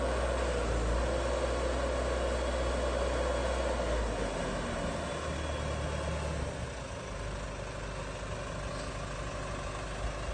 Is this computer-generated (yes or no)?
no